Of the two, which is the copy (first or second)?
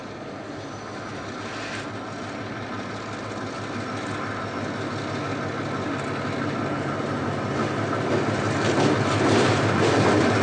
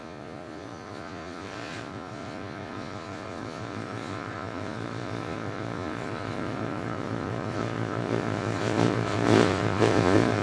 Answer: second